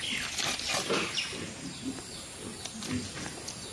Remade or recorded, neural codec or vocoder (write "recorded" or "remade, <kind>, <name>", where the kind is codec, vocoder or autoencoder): recorded